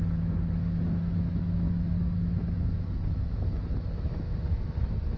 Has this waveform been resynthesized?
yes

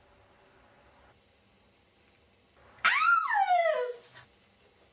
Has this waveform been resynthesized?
no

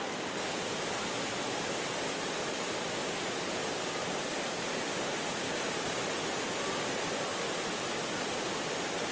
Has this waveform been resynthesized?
no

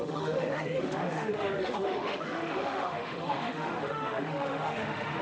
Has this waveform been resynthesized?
yes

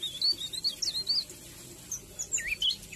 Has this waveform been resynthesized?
no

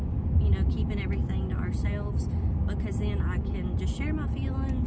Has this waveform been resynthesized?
no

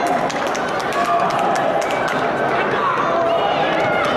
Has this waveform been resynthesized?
no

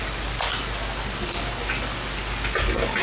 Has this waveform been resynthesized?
no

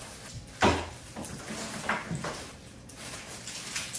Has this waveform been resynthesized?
no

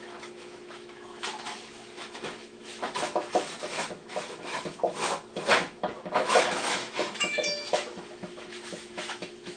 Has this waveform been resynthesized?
yes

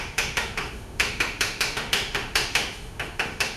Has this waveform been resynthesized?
yes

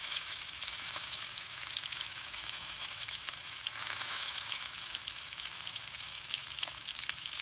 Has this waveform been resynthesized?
yes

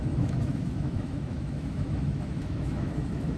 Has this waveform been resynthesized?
yes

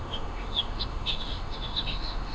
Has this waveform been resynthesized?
yes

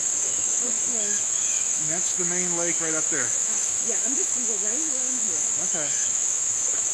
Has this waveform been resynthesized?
yes